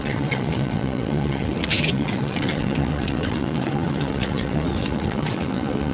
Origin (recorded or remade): remade